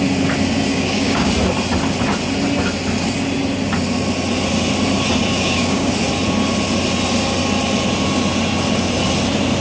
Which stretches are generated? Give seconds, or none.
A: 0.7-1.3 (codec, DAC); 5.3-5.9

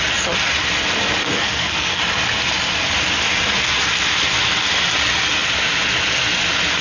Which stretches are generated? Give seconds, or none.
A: 1.2-2.0 (codec, SNAC)

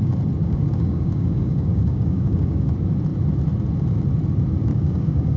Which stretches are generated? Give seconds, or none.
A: 0.4-2.7 (codec, DAC); 4.7-5.4

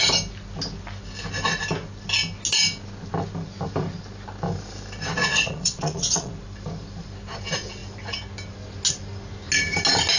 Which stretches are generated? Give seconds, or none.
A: 5.2-6.3 (vocoder, Vocos)

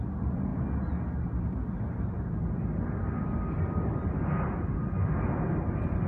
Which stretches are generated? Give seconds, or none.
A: none

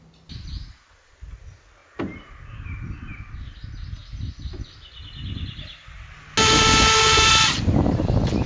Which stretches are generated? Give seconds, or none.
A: none

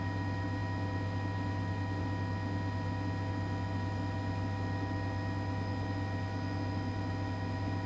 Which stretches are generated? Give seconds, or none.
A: none